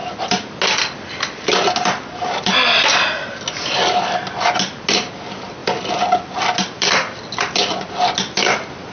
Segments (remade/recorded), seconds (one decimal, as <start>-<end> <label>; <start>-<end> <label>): 0.0-8.9 recorded